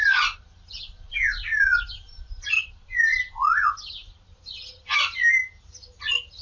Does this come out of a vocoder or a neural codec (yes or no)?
no